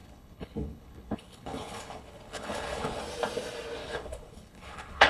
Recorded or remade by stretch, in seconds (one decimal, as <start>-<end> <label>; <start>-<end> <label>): 0.0-3.0 remade; 3.0-3.8 recorded; 3.8-5.1 remade